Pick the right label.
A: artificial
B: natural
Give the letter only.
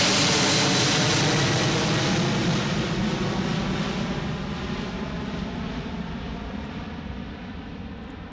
B